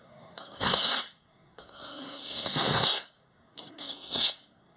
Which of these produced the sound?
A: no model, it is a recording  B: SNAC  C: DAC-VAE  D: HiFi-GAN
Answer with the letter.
B